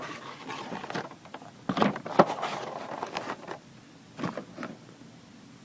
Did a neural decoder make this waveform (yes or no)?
no